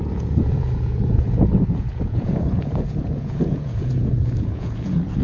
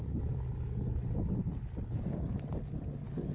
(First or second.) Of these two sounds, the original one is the second